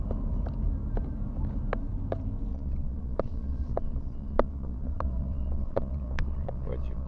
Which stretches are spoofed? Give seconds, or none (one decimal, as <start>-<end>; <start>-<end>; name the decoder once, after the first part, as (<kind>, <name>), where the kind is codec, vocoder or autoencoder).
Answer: 2.5-7.1 (vocoder, Vocos)